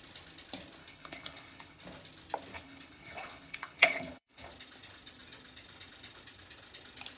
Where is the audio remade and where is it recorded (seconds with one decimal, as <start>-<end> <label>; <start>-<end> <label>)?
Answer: 0.0-0.8 recorded; 0.8-1.8 remade; 1.8-2.5 recorded; 2.5-4.5 remade; 4.5-7.2 recorded

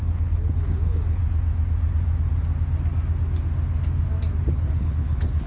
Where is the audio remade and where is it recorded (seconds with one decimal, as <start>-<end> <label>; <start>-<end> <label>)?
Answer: 0.0-1.2 remade; 1.2-4.5 recorded; 4.5-5.5 remade

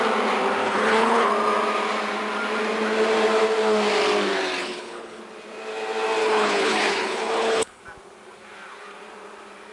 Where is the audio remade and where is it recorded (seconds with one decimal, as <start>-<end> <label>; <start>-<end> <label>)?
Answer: 0.0-0.6 recorded; 0.6-1.3 remade; 1.3-4.6 recorded; 4.6-5.2 remade; 5.2-6.2 recorded; 6.2-7.8 remade; 7.8-9.7 recorded